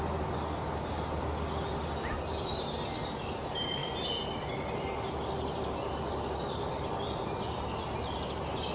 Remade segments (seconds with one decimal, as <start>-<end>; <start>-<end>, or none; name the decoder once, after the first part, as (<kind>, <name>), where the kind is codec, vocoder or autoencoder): none